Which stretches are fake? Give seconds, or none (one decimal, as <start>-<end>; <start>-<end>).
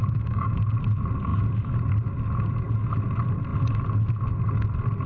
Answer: 0.0-0.6